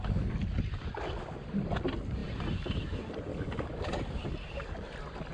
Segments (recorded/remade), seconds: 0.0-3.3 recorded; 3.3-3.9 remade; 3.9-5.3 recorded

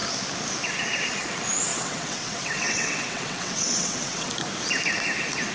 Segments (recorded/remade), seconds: 0.0-1.7 recorded; 1.7-4.3 remade; 4.3-5.5 recorded